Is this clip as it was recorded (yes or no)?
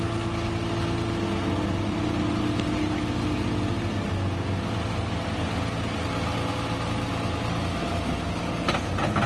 yes